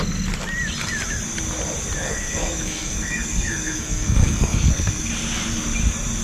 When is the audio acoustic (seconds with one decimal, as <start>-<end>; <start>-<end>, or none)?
0.0-2.0; 5.1-6.2